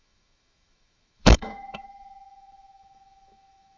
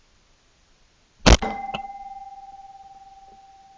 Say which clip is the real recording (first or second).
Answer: second